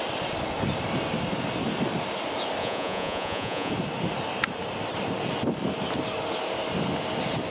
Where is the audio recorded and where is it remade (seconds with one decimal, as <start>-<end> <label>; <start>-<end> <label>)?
0.0-2.6 recorded; 2.6-3.7 remade; 3.7-7.5 recorded